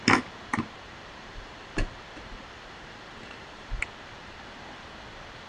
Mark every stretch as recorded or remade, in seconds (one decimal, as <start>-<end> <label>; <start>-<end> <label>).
0.0-0.5 recorded; 0.5-3.8 remade; 3.8-4.2 recorded; 4.2-4.9 remade; 4.9-5.5 recorded